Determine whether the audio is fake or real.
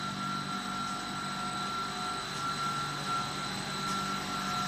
real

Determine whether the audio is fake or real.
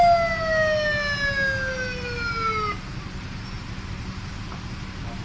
real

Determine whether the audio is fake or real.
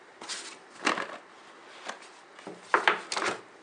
real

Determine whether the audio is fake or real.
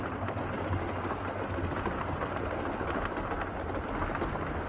real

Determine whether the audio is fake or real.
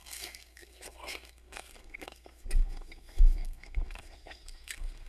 fake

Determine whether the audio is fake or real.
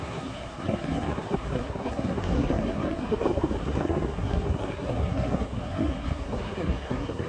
fake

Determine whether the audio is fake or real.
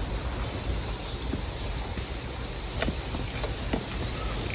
real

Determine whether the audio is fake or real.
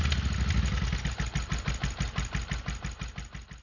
real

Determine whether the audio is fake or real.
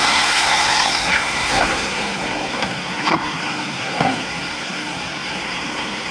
fake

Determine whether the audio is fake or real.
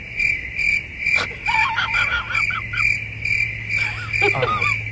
real